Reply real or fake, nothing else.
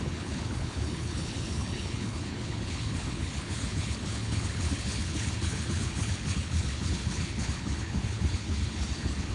fake